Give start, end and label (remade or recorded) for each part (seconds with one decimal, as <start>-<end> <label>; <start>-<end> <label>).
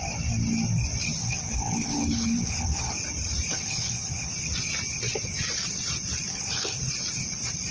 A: 0.0-1.2 recorded; 1.2-2.9 remade; 2.9-3.5 recorded; 3.5-4.3 remade; 4.3-6.3 recorded; 6.3-6.8 remade; 6.8-7.7 recorded